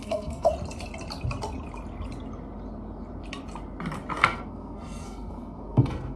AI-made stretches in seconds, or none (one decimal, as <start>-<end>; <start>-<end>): 0.0-0.5; 4.2-6.2